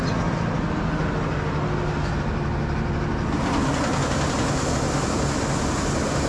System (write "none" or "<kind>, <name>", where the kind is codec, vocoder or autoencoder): none